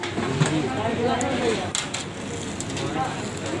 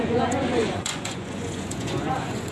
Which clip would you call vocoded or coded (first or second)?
second